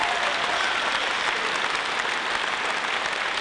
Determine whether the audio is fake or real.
real